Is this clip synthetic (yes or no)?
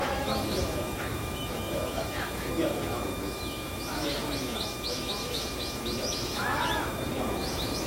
yes